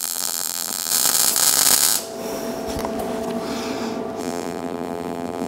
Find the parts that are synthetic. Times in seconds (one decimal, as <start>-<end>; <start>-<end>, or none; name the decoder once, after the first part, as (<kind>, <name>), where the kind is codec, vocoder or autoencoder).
0.0-0.9 (vocoder, BigVGAN v2); 4.2-5.5